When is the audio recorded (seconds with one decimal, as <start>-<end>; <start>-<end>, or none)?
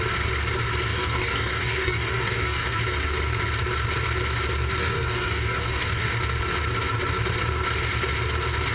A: 0.0-0.9; 2.8-4.8; 6.1-8.7